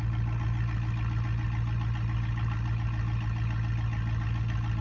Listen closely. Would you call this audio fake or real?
real